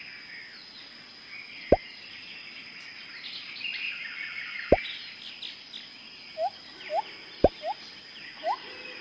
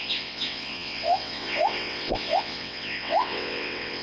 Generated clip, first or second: second